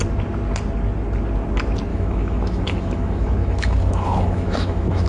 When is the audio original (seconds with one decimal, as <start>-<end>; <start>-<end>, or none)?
0.0-1.9